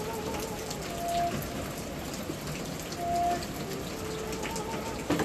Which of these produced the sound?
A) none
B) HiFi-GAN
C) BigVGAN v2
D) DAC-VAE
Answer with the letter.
A